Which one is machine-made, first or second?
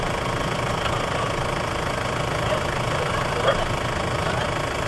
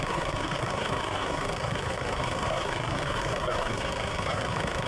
second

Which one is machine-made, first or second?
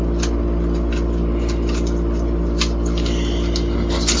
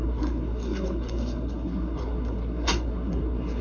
second